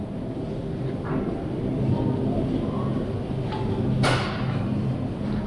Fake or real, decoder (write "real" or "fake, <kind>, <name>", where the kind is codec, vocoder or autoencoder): real